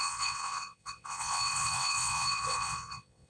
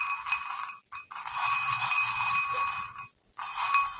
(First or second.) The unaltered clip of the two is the second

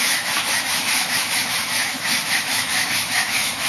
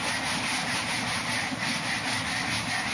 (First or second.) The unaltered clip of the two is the second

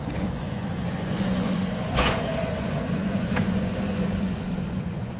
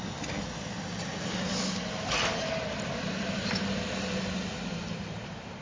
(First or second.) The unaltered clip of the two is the second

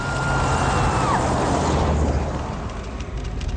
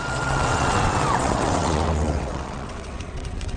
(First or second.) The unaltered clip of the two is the first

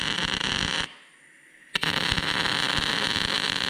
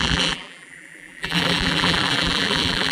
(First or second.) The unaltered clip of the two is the first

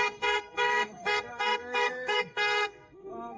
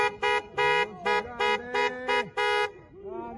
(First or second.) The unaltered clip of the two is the second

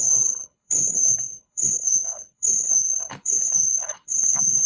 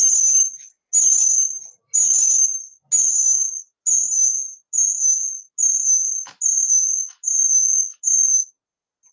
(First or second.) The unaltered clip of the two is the second